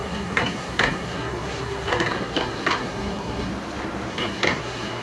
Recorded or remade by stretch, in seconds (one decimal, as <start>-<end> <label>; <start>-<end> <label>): 0.0-3.5 remade; 3.5-4.1 recorded; 4.1-5.0 remade